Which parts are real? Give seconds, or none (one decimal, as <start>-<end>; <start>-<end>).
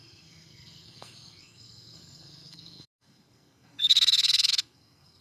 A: none